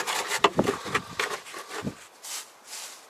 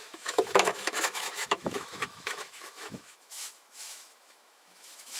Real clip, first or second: first